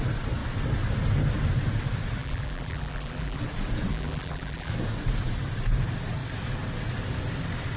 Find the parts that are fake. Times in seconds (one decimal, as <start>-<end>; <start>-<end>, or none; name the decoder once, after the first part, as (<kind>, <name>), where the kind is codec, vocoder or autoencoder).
2.2-3.4 (vocoder, BigVGAN v2); 3.9-4.7